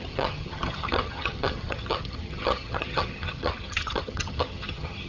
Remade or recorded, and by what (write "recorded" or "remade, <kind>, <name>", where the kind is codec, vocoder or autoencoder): remade, vocoder, HiFi-GAN